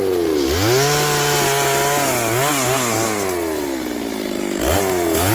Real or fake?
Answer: real